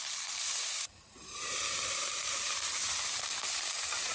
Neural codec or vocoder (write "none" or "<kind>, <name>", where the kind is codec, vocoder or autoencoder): vocoder, BigVGAN v2